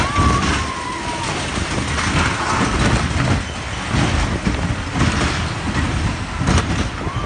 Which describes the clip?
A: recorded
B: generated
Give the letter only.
A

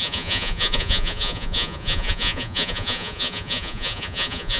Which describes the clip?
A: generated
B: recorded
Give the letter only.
A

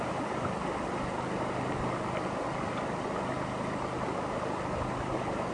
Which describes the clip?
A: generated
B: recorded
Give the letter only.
B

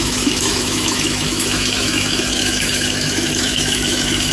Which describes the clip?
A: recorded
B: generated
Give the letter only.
B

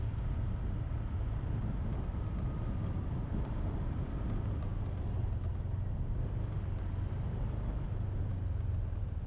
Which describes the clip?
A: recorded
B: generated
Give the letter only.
A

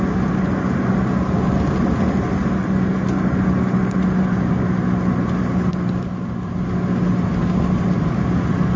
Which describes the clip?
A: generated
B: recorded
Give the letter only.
B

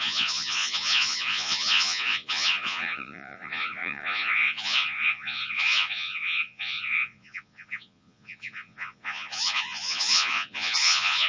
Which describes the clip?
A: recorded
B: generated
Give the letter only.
B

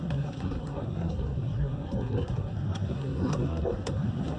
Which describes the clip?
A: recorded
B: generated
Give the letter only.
B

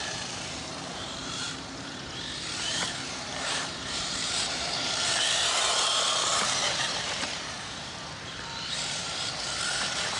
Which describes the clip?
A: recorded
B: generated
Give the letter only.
B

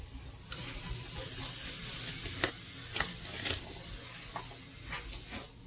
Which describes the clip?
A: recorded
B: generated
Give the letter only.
A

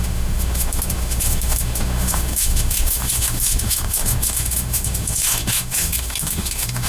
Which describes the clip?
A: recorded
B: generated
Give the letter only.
B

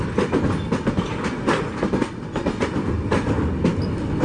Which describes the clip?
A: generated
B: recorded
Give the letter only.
B